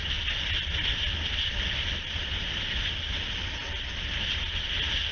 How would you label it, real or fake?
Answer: real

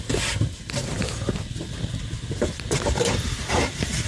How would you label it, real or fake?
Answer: fake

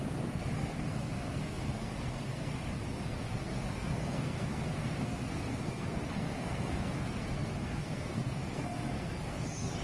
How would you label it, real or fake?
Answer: fake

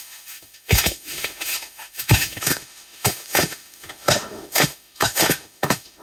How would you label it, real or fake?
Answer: fake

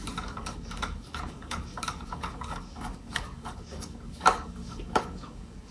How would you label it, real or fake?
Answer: fake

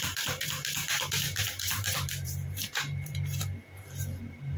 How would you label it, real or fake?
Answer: fake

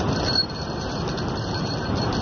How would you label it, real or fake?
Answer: real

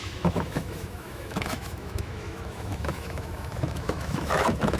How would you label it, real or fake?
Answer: fake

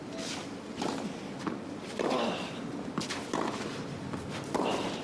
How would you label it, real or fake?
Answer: real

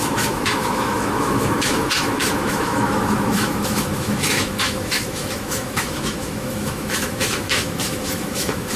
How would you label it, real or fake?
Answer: fake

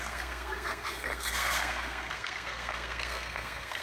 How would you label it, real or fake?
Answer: fake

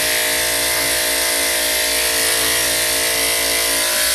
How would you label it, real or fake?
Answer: real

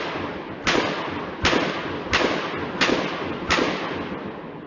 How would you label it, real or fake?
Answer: real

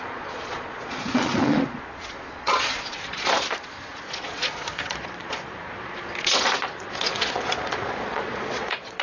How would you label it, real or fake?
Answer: fake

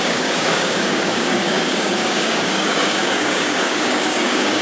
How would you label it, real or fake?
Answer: fake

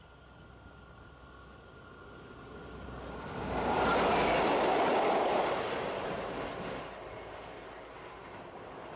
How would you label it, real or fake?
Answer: real